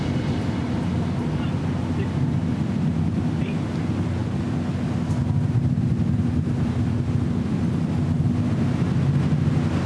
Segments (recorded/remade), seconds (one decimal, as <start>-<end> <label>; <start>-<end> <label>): 0.0-9.9 recorded